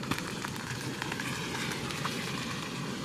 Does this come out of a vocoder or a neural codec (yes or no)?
no